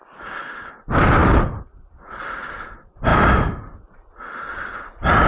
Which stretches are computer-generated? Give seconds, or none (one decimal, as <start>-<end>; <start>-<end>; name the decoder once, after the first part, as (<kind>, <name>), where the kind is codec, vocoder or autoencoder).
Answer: none